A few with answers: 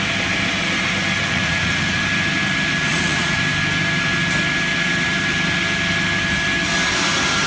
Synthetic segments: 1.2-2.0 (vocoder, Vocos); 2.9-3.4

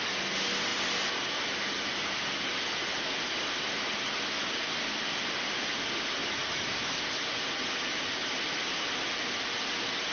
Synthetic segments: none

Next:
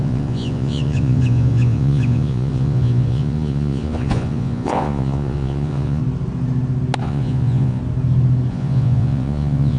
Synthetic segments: 0.0-6.0 (vocoder, Vocos); 7.0-7.8; 8.5-9.8

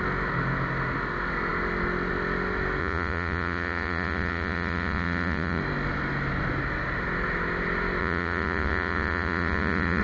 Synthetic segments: 2.8-5.6 (vocoder, Vocos); 8.0-10.0

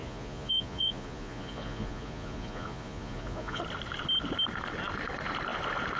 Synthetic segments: 0.0-3.6 (vocoder, Vocos)

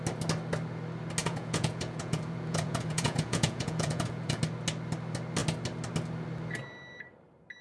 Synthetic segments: 1.2-4.4 (vocoder, Vocos)

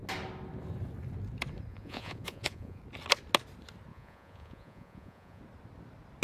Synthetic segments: 1.7-2.8 (vocoder, Vocos); 3.9-5.4